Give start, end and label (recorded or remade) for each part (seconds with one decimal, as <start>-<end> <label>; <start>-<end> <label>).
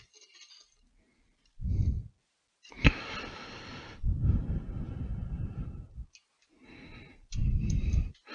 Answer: 0.0-8.3 recorded